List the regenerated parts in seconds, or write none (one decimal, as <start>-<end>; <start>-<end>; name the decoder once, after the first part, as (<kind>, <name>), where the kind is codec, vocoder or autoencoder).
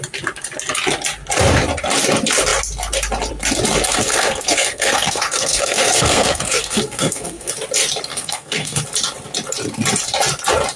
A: 3.9-7.5 (codec, SNAC); 8.1-8.8